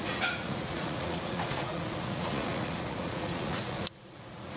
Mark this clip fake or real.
fake